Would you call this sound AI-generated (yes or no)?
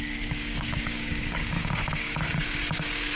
yes